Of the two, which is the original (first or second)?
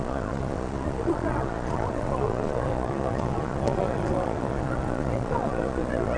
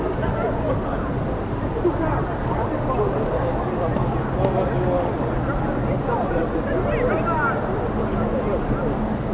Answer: second